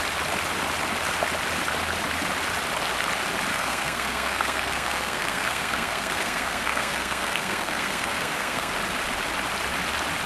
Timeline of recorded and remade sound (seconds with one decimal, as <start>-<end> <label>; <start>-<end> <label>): 0.0-3.5 recorded; 3.5-8.7 remade; 8.7-10.3 recorded